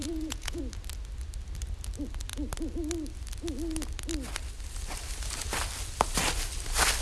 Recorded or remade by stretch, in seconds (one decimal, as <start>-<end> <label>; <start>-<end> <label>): 0.0-0.6 remade; 0.6-7.0 recorded